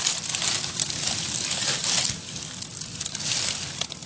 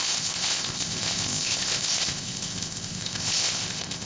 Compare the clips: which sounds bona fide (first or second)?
first